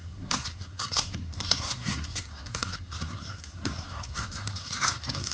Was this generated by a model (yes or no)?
yes